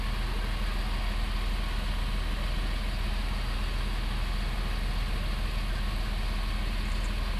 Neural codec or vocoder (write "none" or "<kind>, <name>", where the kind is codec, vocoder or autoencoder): none